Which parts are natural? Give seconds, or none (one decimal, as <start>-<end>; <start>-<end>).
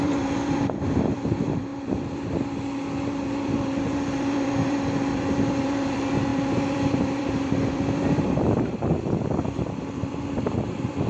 none